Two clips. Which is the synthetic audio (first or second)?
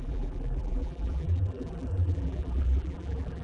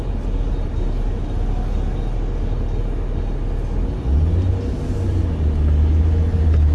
first